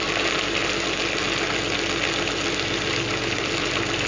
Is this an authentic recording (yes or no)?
yes